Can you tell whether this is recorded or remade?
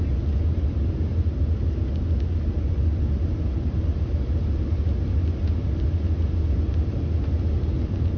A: recorded